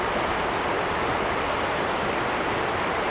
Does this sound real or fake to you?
real